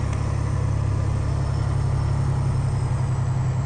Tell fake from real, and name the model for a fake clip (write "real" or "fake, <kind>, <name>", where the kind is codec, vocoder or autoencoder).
real